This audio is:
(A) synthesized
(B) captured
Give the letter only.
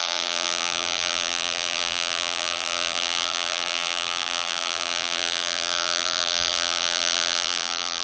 A